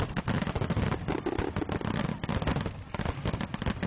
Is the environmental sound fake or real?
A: real